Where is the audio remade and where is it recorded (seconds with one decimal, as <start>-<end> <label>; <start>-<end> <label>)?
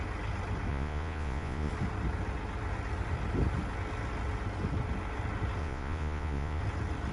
0.0-0.7 recorded; 0.7-1.7 remade; 1.7-5.6 recorded; 5.6-6.6 remade; 6.6-7.1 recorded